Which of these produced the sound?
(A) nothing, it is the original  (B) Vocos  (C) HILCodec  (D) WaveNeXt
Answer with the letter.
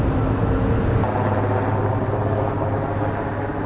A